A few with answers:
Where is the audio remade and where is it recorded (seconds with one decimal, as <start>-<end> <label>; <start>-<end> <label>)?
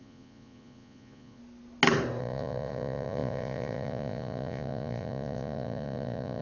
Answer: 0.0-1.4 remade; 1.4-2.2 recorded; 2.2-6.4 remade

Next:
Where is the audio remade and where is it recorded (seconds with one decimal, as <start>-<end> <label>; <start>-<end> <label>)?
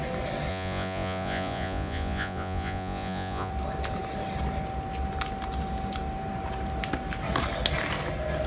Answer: 0.0-0.5 recorded; 0.5-3.5 remade; 3.5-8.5 recorded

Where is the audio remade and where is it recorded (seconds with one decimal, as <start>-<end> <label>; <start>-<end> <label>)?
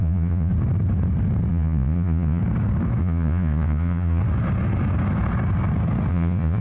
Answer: 0.0-0.5 remade; 0.5-1.5 recorded; 1.5-2.4 remade; 2.4-3.0 recorded; 3.0-4.2 remade; 4.2-6.1 recorded; 6.1-6.6 remade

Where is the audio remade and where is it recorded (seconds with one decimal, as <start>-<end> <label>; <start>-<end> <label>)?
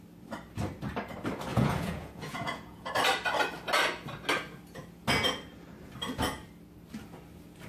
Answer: 0.0-1.5 recorded; 1.5-2.9 remade; 2.9-7.7 recorded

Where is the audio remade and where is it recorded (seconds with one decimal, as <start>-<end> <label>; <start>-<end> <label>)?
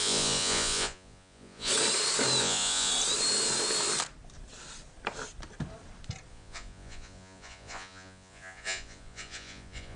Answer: 0.0-1.7 remade; 1.7-2.4 recorded; 2.4-2.9 remade; 2.9-6.3 recorded; 6.3-10.0 remade